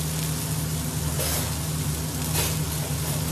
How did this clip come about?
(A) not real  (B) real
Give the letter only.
B